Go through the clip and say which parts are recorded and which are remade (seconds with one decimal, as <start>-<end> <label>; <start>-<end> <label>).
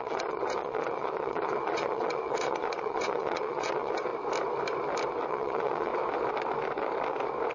0.0-4.1 remade; 4.1-5.3 recorded; 5.3-5.9 remade; 5.9-7.5 recorded